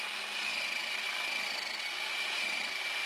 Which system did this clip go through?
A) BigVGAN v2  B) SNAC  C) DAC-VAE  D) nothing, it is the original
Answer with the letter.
D